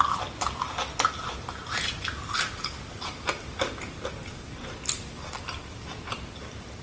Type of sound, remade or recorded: recorded